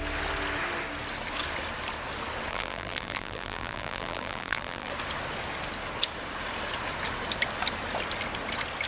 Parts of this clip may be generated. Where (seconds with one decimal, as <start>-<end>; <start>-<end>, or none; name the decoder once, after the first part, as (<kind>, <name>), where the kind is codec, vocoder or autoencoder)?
2.5-4.9 (vocoder, BigVGAN v2)